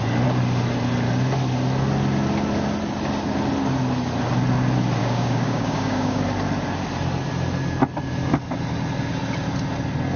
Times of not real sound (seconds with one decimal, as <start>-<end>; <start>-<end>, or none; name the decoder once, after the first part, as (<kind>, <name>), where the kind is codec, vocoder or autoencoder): 5.0-6.2 (codec, DAC)